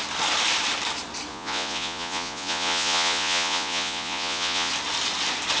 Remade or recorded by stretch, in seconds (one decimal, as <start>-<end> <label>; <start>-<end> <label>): 0.0-1.3 recorded; 1.3-4.7 remade; 4.7-5.6 recorded

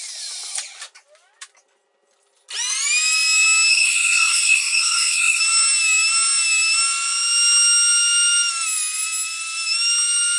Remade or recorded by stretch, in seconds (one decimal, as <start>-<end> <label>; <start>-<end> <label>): 0.0-3.7 recorded; 3.7-5.4 remade; 5.4-10.4 recorded